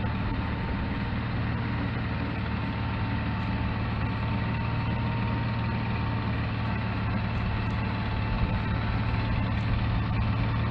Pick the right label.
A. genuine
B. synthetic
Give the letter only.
A